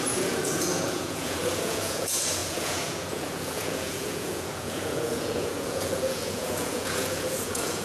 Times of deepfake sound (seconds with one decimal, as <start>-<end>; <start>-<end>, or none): 0.0-7.8